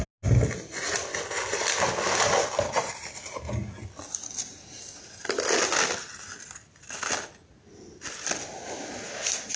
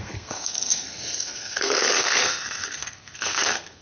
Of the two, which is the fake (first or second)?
second